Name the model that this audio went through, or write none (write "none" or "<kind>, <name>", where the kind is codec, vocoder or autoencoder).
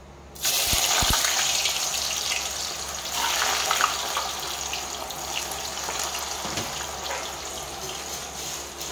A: none